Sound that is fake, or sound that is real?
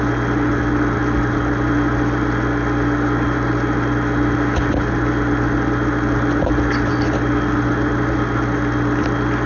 real